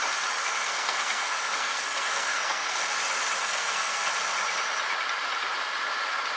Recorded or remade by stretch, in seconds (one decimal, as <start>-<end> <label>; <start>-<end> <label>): 0.0-0.4 recorded; 0.4-2.9 remade; 2.9-3.4 recorded; 3.4-4.1 remade; 4.1-6.4 recorded